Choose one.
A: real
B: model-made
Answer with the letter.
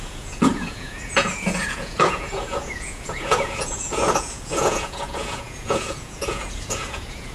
B